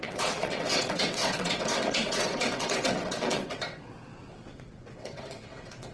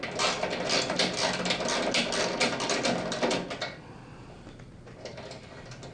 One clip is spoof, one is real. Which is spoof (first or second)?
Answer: first